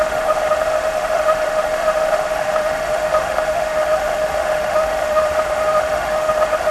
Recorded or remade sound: remade